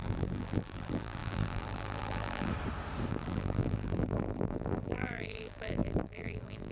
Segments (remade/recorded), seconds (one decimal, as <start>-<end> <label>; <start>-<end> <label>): 0.0-2.5 remade; 2.5-3.1 recorded; 3.1-6.7 remade